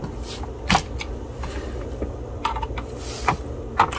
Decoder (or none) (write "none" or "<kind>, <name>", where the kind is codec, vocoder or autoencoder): none